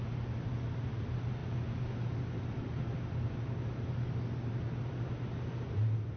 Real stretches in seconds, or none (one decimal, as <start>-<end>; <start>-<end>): 0.0-6.2